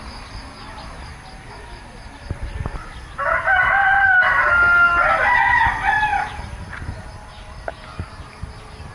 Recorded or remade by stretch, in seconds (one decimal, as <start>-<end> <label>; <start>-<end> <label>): 0.0-8.9 recorded